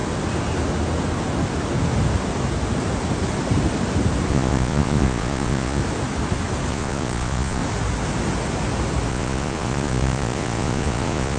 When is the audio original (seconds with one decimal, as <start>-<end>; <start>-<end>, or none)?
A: 0.0-4.3; 5.8-6.7; 7.6-9.1